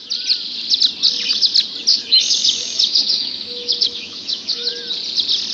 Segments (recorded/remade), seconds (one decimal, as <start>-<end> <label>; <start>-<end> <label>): 0.0-1.9 recorded; 1.9-4.7 remade; 4.7-5.5 recorded